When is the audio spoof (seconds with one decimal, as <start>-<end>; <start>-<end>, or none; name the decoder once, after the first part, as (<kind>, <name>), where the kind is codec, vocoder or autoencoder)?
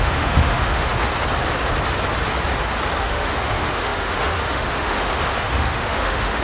0.0-1.1 (autoencoder, DAC-VAE); 3.0-6.4